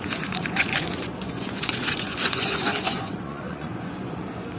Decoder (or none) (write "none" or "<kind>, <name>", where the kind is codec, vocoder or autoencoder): vocoder, Vocos